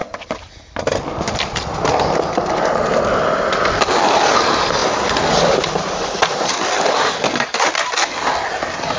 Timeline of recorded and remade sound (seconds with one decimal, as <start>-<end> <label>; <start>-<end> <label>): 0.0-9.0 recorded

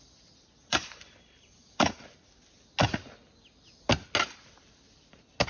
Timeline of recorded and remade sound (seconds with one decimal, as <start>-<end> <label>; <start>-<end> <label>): 0.0-0.7 recorded; 0.7-1.9 remade; 1.9-5.5 recorded

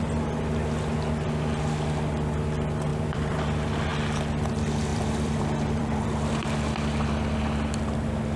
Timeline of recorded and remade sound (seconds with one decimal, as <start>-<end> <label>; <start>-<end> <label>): 0.0-2.9 recorded; 2.9-3.4 remade; 3.4-4.9 recorded; 4.9-6.1 remade; 6.1-8.4 recorded

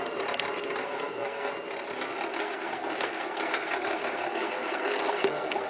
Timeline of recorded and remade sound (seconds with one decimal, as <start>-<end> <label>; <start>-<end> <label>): 0.0-0.8 recorded; 0.8-1.5 remade; 1.5-2.3 recorded; 2.3-5.7 remade

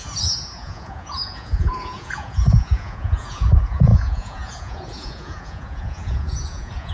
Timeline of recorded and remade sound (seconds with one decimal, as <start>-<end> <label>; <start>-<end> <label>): 0.0-6.9 remade